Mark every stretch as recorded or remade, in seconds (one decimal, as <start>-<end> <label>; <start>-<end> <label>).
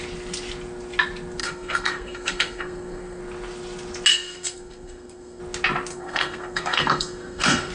0.0-1.4 recorded; 1.4-3.2 remade; 3.2-4.1 recorded; 4.1-5.4 remade; 5.4-5.9 recorded; 5.9-7.7 remade